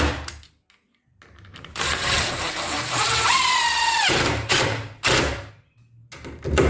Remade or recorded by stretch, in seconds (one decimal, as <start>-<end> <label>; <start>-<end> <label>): 0.0-1.5 recorded; 1.5-5.5 remade; 5.5-6.7 recorded